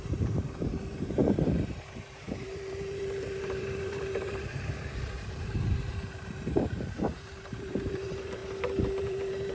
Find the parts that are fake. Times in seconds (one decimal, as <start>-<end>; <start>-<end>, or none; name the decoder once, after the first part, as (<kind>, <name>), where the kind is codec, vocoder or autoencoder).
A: 0.0-8.4 (vocoder, BigVGAN v2); 9.0-9.5

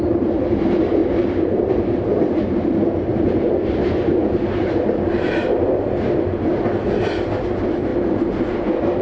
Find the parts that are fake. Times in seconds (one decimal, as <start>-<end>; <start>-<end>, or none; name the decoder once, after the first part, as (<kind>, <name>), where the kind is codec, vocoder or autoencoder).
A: 1.0-6.2 (vocoder, BigVGAN v2)

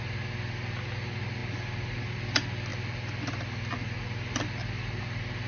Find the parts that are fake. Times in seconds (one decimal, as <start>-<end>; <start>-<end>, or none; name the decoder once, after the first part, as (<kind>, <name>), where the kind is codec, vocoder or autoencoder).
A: none

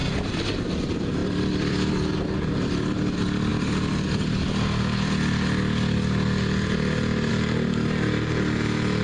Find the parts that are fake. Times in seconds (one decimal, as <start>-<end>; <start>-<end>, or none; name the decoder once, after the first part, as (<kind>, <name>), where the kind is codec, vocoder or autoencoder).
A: 1.2-1.9 (vocoder, BigVGAN v2)